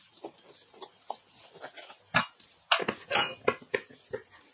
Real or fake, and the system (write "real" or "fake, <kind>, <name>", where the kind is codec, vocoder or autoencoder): real